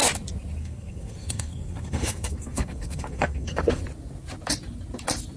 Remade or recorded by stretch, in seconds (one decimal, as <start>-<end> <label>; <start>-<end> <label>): 0.0-0.6 recorded; 0.6-3.8 remade; 3.8-5.4 recorded